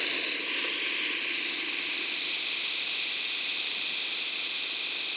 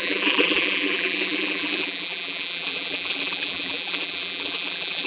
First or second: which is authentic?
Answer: first